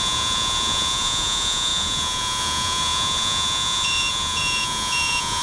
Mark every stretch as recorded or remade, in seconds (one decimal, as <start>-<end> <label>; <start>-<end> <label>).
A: 0.0-5.4 remade